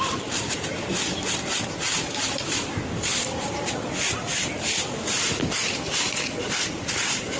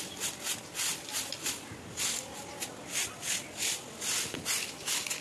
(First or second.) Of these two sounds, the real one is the second